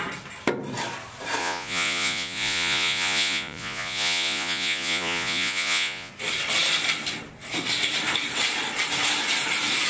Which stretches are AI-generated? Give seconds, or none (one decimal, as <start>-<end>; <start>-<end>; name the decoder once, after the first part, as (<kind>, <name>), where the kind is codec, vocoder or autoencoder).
1.4-6.1 (vocoder, Vocos)

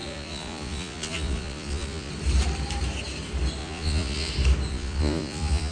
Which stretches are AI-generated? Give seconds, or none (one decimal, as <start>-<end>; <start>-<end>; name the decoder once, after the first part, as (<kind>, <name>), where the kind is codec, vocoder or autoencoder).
0.0-2.1 (vocoder, Vocos); 3.6-4.3; 4.7-5.7